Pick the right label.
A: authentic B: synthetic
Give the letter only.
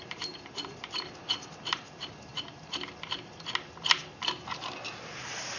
A